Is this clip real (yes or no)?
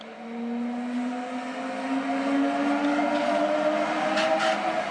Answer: yes